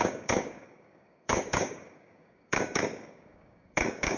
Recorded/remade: remade